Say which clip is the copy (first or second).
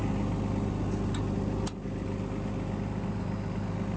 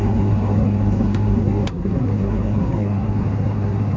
second